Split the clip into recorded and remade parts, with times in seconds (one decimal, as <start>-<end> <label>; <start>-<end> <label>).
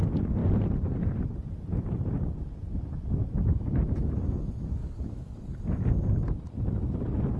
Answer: 0.0-4.8 recorded; 4.8-5.4 remade; 5.4-7.4 recorded